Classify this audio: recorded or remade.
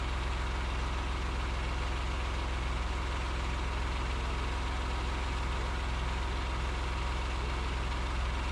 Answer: recorded